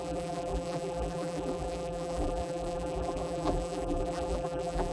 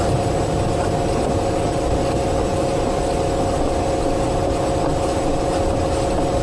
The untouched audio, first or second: second